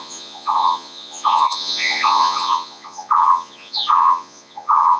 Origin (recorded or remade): remade